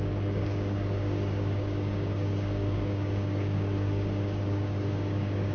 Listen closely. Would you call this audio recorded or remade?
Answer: remade